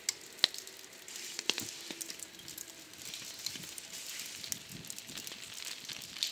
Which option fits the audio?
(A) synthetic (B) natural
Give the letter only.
B